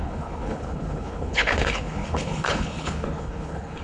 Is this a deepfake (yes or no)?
yes